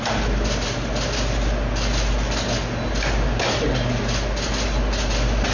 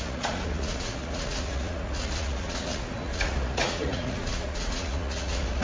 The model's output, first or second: second